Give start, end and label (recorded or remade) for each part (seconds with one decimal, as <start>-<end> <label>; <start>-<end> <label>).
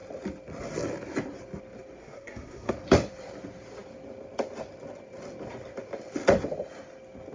0.0-2.0 recorded; 2.0-2.7 remade; 2.7-7.3 recorded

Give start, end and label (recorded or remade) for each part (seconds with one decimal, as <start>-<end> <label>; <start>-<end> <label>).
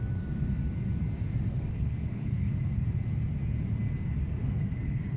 0.0-0.6 remade; 0.6-1.5 recorded; 1.5-2.8 remade; 2.8-4.4 recorded; 4.4-5.2 remade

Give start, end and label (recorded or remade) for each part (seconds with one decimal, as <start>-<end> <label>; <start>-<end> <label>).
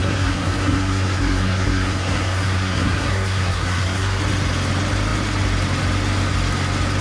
0.0-4.2 remade; 4.2-7.0 recorded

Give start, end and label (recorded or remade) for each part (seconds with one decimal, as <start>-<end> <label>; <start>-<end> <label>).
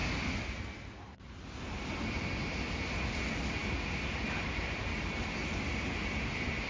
0.0-6.7 recorded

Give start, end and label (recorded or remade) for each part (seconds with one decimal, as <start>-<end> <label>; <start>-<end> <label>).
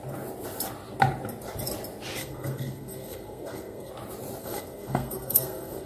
0.0-2.2 recorded; 2.2-3.9 remade; 3.9-4.4 recorded; 4.4-5.9 remade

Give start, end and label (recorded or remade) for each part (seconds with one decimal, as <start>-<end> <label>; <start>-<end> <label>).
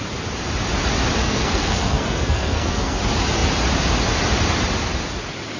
0.0-1.2 recorded; 1.2-3.0 remade; 3.0-5.6 recorded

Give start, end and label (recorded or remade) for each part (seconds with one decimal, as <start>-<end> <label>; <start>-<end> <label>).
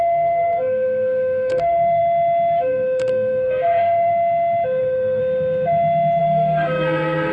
0.0-2.0 remade; 2.0-2.6 recorded; 2.6-4.1 remade; 4.1-4.8 recorded; 4.8-5.2 remade; 5.2-6.2 recorded; 6.2-7.3 remade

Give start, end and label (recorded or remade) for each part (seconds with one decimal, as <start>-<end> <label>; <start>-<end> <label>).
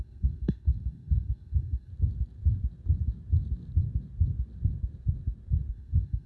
0.0-1.9 remade; 1.9-5.7 recorded; 5.7-6.3 remade